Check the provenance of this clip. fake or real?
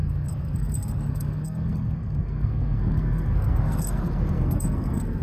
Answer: fake